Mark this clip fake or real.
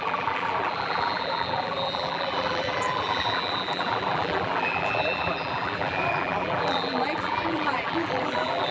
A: fake